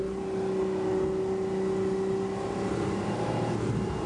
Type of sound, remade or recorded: recorded